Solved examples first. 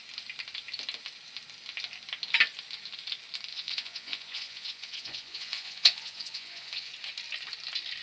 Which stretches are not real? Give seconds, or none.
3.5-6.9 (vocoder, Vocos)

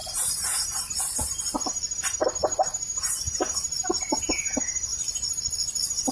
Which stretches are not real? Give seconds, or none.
0.0-1.0 (vocoder, BigVGAN v2); 2.4-4.2

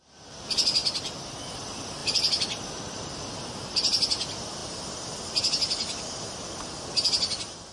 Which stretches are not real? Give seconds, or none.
0.8-1.5 (vocoder, BigVGAN v2); 2.0-3.5

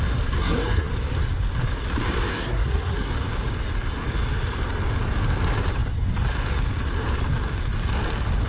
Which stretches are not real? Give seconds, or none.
0.4-0.9 (codec, SNAC); 2.3-3.1

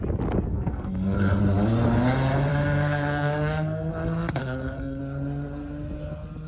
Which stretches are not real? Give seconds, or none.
0.5-1.4 (codec, SNAC); 2.5-3.9; 4.4-5.0

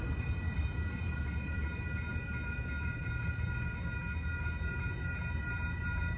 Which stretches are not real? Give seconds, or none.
none

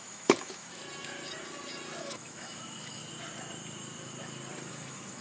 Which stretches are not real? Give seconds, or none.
0.0-0.8 (autoencoder, DAC-VAE); 2.0-3.0; 4.7-5.2